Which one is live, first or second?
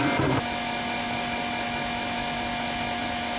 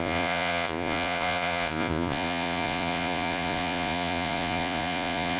first